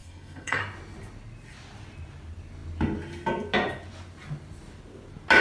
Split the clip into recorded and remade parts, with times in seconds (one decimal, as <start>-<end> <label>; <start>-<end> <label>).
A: 0.0-0.6 remade; 0.6-5.4 recorded